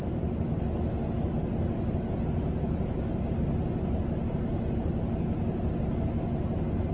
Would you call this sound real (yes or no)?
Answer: yes